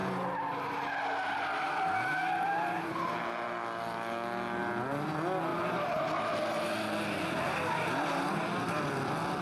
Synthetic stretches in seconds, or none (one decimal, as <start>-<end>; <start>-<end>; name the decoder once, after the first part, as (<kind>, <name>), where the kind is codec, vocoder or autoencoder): 5.5-6.0 (vocoder, BigVGAN v2)